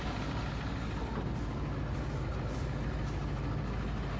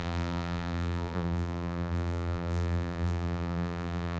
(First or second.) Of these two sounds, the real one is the first